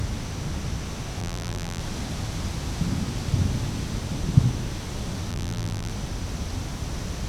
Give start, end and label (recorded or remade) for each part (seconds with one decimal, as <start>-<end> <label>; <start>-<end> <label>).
0.0-1.2 recorded; 1.2-1.8 remade; 1.8-5.3 recorded; 5.3-5.9 remade; 5.9-7.3 recorded